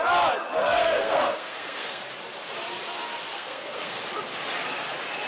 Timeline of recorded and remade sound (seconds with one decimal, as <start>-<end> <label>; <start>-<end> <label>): 0.0-0.6 recorded; 0.6-2.0 remade; 2.0-3.3 recorded; 3.3-4.0 remade; 4.0-5.3 recorded